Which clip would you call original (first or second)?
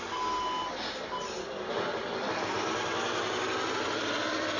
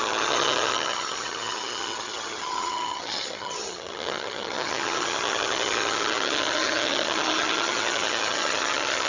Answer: first